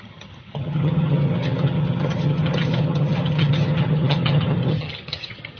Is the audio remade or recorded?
remade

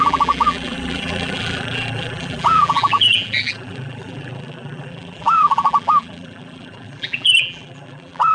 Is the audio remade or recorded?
remade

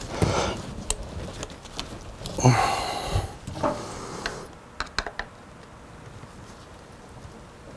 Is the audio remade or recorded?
recorded